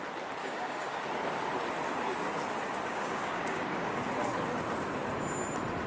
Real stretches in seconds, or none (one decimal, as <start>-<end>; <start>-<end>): 0.0-0.4; 1.0-2.9; 4.1-5.9